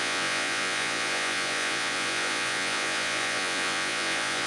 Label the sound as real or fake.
fake